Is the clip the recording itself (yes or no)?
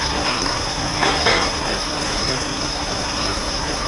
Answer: no